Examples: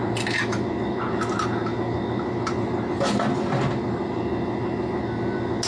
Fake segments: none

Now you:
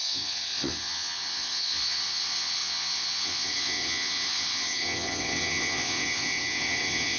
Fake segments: 0.0-7.2